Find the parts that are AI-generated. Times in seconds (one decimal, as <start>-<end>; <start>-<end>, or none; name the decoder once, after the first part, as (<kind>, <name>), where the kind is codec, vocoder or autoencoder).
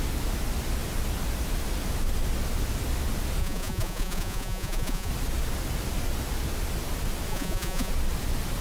3.4-5.1 (vocoder, Vocos); 7.3-7.9